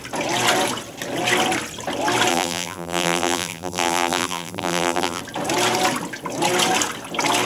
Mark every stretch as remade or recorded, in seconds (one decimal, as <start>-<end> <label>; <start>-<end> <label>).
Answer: 0.0-2.3 recorded; 2.3-5.2 remade; 5.2-7.5 recorded